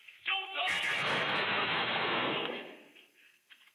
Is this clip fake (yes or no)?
yes